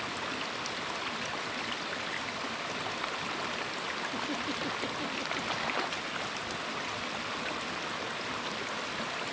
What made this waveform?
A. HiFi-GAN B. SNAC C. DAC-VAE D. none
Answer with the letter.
D